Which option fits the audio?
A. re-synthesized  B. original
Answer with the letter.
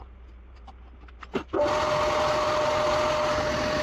B